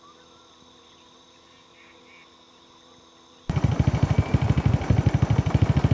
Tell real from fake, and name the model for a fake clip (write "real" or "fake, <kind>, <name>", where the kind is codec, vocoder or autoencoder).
real